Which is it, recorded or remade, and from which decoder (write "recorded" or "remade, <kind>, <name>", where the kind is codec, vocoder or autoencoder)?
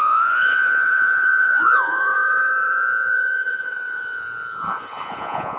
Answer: remade, vocoder, Vocos